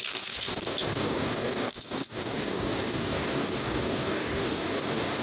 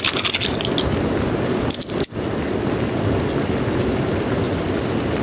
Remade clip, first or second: first